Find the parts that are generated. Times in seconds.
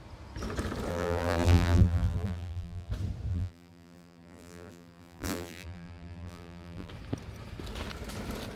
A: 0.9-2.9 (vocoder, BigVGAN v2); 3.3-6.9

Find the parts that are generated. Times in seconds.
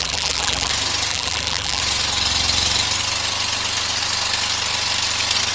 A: 0.0-0.7 (vocoder, BigVGAN v2); 1.1-1.8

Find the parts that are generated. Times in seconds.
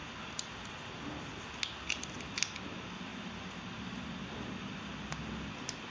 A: none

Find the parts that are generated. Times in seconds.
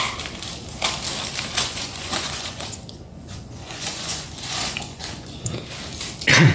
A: 1.6-5.5 (vocoder, Vocos)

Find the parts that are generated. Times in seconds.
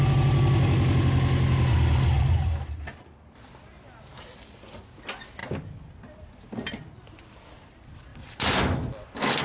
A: none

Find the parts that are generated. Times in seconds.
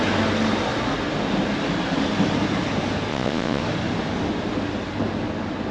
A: 3.1-3.6 (vocoder, Vocos)